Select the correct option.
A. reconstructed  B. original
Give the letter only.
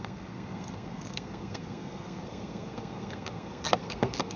A